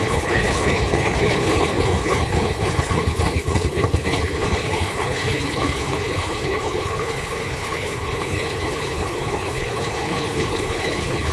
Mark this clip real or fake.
fake